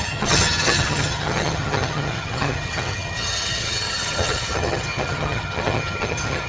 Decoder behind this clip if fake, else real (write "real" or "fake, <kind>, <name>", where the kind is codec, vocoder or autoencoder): fake, vocoder, HiFi-GAN